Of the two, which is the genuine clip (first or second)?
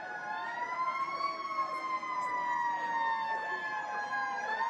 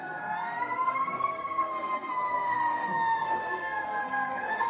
first